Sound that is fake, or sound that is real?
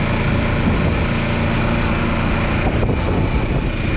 real